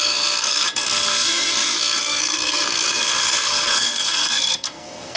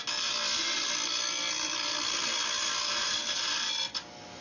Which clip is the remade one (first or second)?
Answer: first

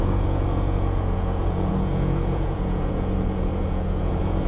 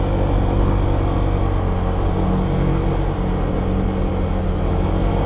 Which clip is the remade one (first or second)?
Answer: first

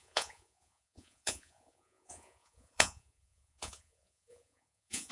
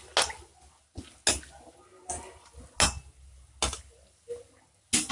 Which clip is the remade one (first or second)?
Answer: first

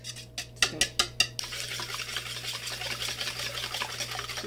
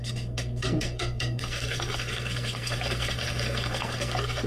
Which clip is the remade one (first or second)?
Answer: second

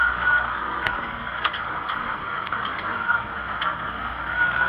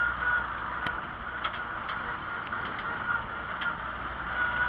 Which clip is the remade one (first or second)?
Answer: first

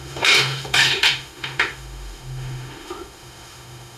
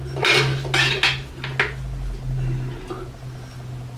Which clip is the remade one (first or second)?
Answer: first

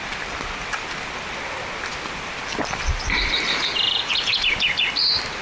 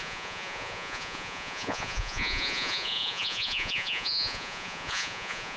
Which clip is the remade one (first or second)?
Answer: second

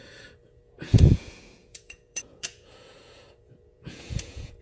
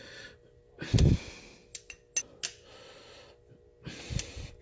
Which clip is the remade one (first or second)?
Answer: first